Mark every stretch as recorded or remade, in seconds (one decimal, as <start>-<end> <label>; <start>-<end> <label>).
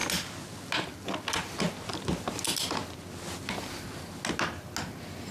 0.0-5.3 recorded